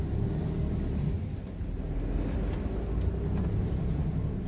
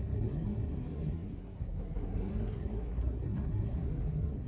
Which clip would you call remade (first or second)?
second